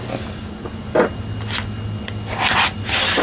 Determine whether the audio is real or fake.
real